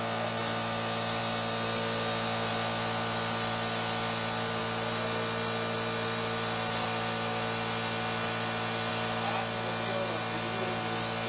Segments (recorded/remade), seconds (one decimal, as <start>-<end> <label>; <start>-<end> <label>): 0.0-11.3 recorded